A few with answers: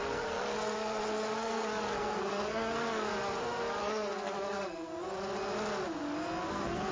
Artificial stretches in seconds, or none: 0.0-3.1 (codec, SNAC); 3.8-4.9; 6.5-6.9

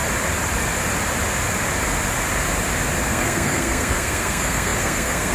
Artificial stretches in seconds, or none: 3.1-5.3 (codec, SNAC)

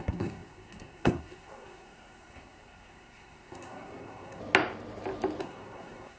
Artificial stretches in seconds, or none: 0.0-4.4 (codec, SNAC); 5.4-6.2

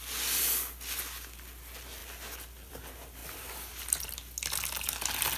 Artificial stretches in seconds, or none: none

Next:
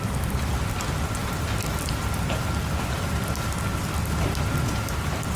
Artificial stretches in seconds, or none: none